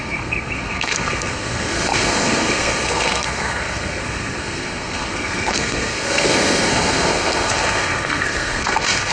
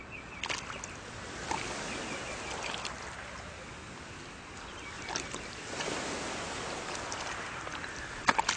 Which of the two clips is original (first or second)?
second